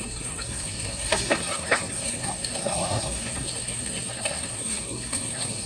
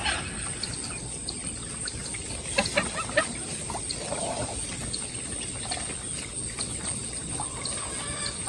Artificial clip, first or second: first